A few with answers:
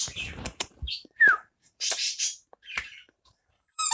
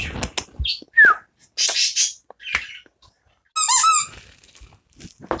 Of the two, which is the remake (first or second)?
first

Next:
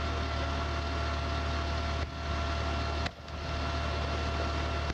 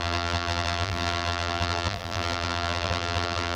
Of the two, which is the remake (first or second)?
second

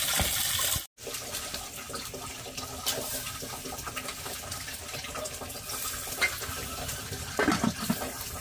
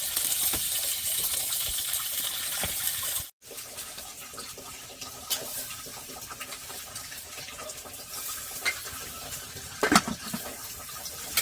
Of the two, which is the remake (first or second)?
second